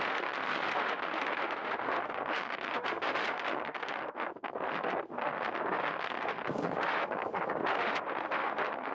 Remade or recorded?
remade